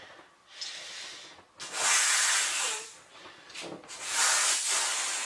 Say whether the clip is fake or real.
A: real